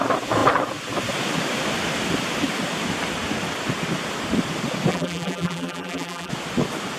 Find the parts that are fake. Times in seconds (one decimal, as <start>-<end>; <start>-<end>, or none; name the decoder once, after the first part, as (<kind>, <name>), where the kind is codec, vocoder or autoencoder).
4.9-6.3 (vocoder, BigVGAN v2)